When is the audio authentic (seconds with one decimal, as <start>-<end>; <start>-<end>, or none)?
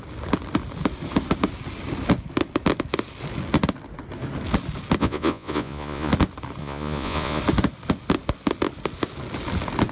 0.0-5.0; 6.1-6.6; 7.4-9.9